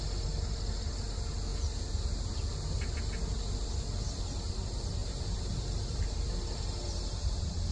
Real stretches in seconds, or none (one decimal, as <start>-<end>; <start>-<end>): 0.0-5.0